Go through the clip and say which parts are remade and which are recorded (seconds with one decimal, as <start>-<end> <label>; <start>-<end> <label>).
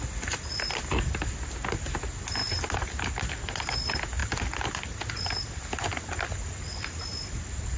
0.0-7.8 recorded